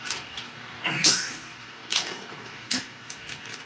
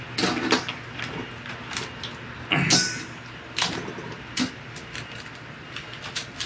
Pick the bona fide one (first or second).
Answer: second